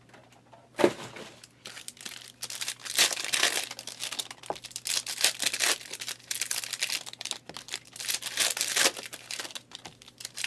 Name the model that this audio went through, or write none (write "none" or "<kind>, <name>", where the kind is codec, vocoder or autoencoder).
none